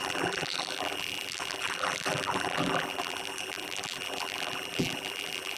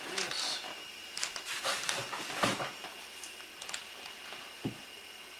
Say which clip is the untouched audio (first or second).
second